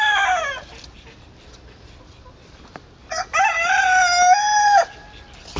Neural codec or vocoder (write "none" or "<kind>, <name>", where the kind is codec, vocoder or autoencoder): none